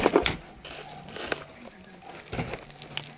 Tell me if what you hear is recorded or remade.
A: recorded